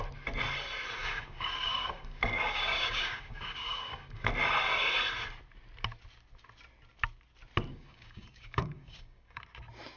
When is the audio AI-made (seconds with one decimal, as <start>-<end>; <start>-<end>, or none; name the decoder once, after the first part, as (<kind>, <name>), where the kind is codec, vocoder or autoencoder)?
1.0-4.3 (codec, DAC); 7.7-9.4